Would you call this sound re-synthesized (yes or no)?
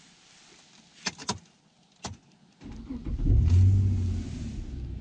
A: no